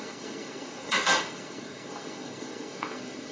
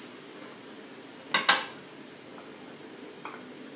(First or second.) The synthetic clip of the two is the first